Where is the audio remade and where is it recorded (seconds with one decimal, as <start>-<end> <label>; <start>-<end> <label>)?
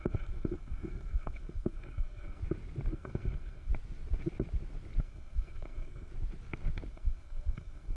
0.0-2.4 remade; 2.4-2.9 recorded; 2.9-3.7 remade; 3.7-5.0 recorded; 5.0-6.1 remade; 6.1-6.9 recorded; 6.9-8.0 remade